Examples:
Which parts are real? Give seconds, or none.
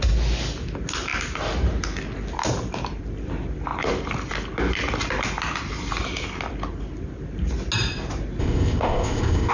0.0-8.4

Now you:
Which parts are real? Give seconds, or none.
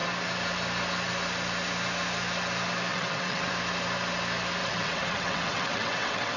0.0-2.9; 3.5-4.6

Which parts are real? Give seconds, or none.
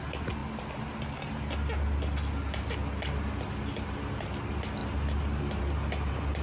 0.0-6.4